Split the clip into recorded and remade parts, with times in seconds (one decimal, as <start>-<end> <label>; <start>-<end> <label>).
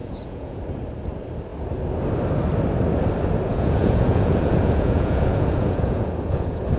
0.0-0.6 remade; 0.6-3.5 recorded; 3.5-6.8 remade